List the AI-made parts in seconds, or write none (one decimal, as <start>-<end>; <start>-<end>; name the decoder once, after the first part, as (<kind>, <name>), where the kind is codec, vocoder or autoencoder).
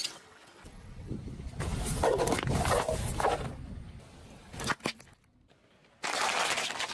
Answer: 0.0-1.1 (vocoder, WaveNeXt)